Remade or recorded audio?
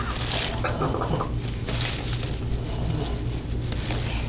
recorded